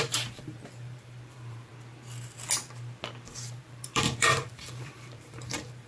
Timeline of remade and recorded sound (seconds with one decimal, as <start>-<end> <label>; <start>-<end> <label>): 0.0-1.7 remade; 1.7-3.6 recorded; 3.6-5.9 remade